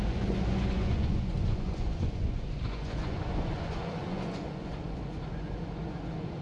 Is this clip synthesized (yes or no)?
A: yes